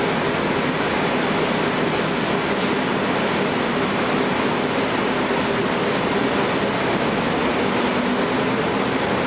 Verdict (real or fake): real